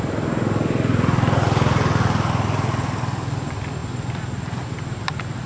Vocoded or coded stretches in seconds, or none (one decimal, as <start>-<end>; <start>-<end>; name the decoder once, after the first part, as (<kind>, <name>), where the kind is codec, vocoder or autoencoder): none